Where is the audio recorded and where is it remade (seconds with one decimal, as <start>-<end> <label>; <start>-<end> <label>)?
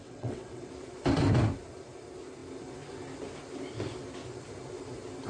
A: 0.0-0.7 remade; 0.7-5.3 recorded